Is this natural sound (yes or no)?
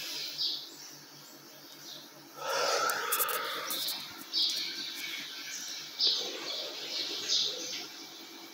yes